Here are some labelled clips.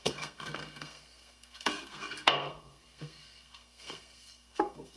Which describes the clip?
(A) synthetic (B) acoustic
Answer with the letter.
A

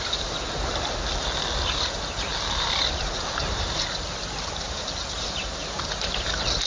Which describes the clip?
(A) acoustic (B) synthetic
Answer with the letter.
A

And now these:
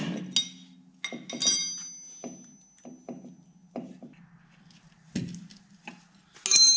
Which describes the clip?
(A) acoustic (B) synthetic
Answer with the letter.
A